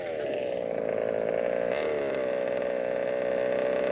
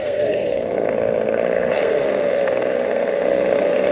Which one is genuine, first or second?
first